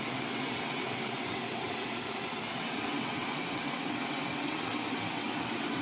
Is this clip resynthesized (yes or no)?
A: yes